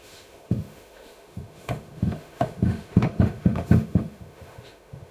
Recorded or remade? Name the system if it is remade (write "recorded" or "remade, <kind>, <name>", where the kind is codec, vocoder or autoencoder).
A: remade, autoencoder, DAC-VAE